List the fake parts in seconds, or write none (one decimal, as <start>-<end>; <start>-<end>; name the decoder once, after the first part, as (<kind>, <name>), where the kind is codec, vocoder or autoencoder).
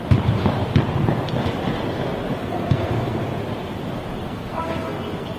2.4-3.2 (codec, SNAC); 4.2-5.4